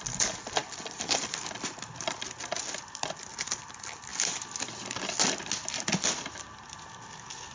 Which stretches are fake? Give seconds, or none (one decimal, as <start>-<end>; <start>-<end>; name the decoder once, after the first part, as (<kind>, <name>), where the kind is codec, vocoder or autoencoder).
none